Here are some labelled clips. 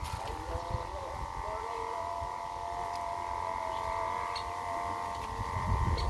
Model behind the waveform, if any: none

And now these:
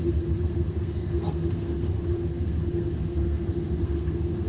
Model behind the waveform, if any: codec, SNAC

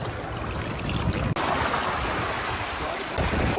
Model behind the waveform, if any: none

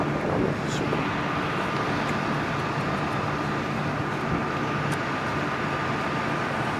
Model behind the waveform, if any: none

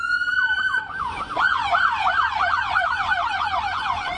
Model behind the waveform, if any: vocoder, Vocos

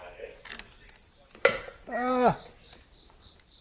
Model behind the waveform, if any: none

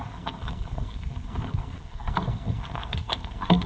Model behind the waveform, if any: codec, SNAC